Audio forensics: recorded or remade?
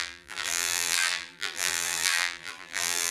remade